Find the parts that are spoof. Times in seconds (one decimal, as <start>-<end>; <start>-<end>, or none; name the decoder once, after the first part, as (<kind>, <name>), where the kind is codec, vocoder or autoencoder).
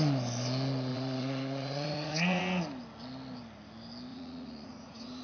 0.9-2.4 (vocoder, Vocos); 4.1-5.2